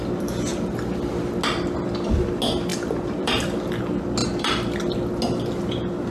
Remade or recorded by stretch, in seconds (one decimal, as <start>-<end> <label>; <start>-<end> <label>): 0.0-0.5 recorded; 0.5-1.2 remade; 1.2-2.7 recorded; 2.7-3.8 remade; 3.8-4.2 recorded; 4.2-5.1 remade; 5.1-6.1 recorded